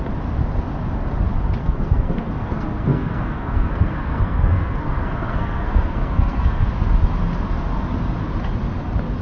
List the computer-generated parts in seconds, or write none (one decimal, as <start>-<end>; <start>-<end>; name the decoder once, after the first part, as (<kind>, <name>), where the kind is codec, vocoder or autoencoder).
1.6-6.7 (codec, SNAC)